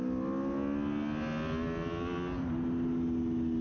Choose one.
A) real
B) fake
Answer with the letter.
A